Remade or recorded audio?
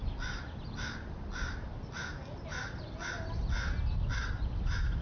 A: recorded